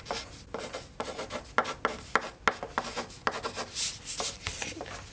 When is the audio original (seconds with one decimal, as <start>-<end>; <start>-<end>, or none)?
0.0-5.1